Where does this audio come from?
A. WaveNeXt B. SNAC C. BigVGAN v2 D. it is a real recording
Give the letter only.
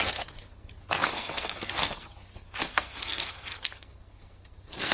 B